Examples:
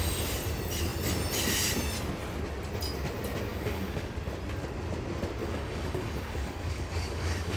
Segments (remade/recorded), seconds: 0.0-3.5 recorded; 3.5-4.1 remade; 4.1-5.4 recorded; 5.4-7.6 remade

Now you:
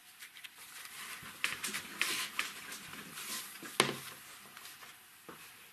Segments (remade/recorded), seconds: 0.0-3.4 remade; 3.4-5.7 recorded

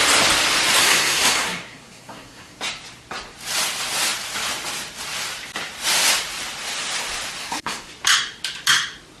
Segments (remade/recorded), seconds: 0.0-0.8 recorded; 0.8-2.6 remade; 2.6-7.4 recorded; 7.4-7.9 remade; 7.9-9.2 recorded

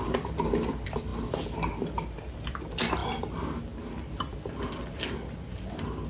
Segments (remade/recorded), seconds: 0.0-6.1 recorded

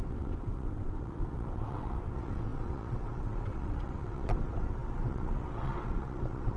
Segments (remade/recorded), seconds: 0.0-6.6 remade